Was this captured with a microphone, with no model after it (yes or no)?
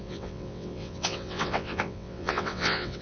no